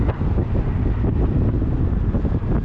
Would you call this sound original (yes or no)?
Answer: yes